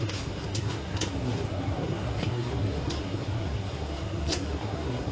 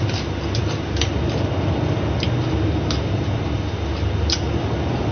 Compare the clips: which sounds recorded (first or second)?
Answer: second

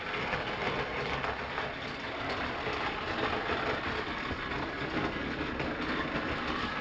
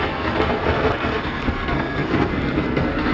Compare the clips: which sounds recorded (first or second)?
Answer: first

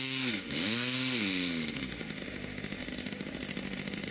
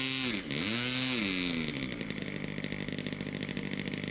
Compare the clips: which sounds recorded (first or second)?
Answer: second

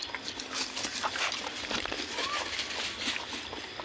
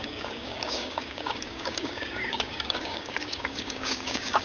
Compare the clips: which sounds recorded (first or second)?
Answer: first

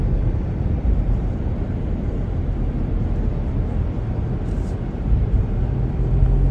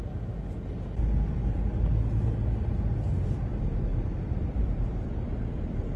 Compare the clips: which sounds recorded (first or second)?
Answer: second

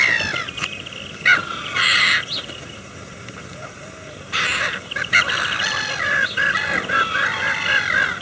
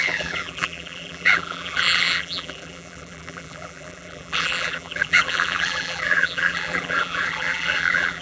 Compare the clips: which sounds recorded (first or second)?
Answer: first